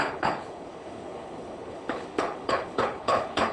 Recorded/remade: remade